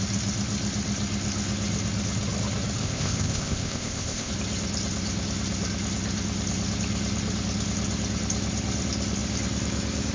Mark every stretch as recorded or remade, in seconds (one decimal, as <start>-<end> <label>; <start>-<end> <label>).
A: 0.0-2.8 recorded; 2.8-4.3 remade; 4.3-10.1 recorded